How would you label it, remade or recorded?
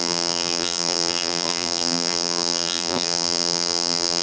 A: remade